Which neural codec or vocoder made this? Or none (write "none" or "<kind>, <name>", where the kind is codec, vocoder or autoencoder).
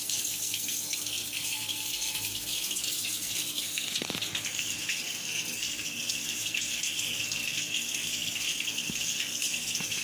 codec, SNAC